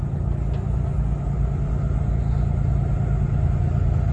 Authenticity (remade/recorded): recorded